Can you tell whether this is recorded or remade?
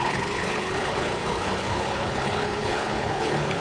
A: remade